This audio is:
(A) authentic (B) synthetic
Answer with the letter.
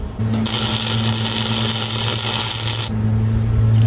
A